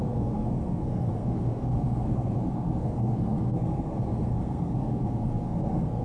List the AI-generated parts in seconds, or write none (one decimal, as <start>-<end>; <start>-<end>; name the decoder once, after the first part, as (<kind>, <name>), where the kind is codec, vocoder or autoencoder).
0.0-6.0 (codec, SNAC)